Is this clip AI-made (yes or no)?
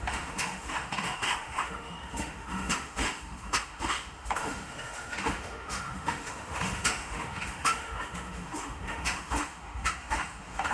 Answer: yes